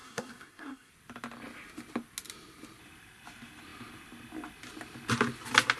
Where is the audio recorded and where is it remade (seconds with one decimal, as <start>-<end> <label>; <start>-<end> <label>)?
0.0-0.9 remade; 0.9-5.8 recorded